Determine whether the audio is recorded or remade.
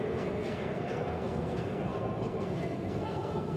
remade